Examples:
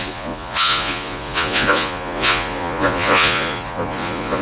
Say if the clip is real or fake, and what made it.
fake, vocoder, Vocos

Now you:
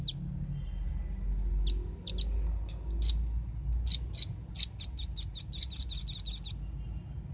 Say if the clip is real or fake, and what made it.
real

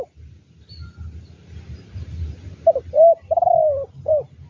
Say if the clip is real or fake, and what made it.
real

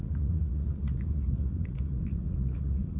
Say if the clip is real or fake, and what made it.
fake, vocoder, Vocos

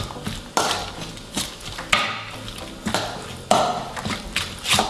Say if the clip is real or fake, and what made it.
real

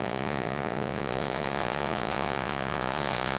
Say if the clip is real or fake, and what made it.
fake, vocoder, Vocos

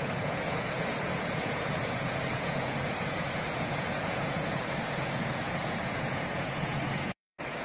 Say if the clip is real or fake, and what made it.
fake, vocoder, Vocos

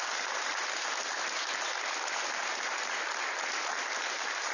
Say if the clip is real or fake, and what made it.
real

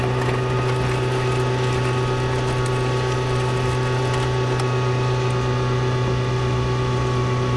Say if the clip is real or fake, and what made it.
real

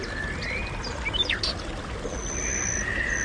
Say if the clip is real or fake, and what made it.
real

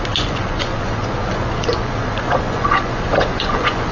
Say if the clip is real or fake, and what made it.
fake, vocoder, Vocos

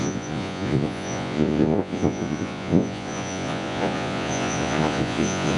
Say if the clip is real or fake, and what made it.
fake, vocoder, Vocos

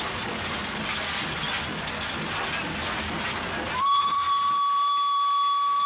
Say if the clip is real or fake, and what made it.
real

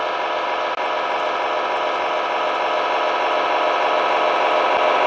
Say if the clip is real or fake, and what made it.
real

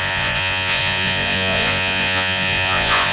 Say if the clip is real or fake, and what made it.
fake, vocoder, Vocos